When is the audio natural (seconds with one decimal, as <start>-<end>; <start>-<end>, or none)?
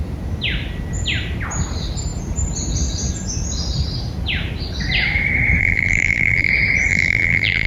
0.0-5.6; 6.5-6.9